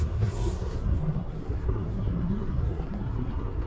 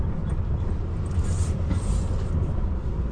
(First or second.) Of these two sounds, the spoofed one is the first